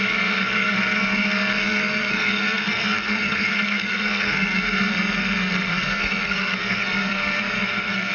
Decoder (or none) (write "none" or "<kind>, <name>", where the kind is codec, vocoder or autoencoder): codec, SNAC